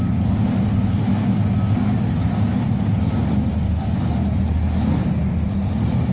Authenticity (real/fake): real